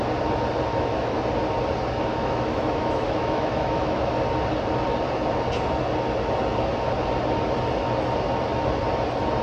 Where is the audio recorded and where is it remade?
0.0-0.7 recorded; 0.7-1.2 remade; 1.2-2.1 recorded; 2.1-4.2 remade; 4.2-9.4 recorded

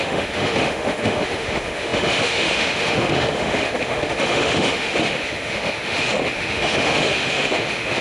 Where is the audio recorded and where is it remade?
0.0-8.0 remade

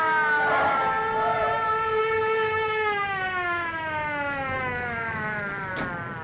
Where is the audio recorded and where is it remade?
0.0-2.0 recorded; 2.0-5.7 remade; 5.7-6.2 recorded

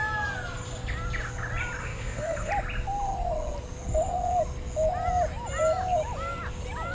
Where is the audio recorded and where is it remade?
0.0-1.8 recorded; 1.8-2.5 remade; 2.5-6.9 recorded

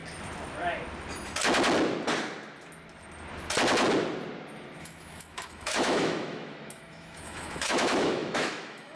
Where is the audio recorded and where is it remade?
0.0-4.8 recorded; 4.8-9.0 remade

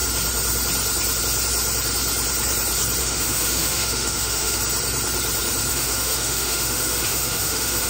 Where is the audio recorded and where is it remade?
0.0-3.0 recorded; 3.0-4.6 remade; 4.6-5.7 recorded; 5.7-7.9 remade

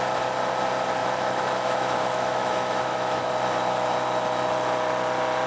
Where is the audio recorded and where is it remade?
0.0-1.0 recorded; 1.0-3.3 remade; 3.3-5.5 recorded